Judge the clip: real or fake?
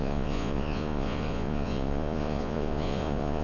fake